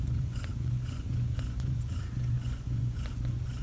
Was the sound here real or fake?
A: fake